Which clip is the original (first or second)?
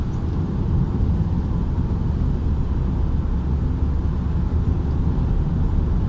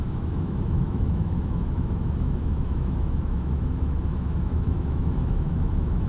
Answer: first